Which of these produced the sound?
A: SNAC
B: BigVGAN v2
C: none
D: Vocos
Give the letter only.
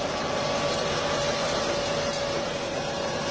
C